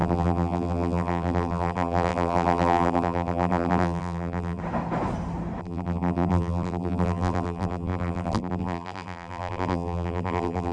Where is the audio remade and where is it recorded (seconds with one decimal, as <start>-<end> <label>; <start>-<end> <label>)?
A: 0.0-4.6 remade; 4.6-5.6 recorded; 5.6-10.7 remade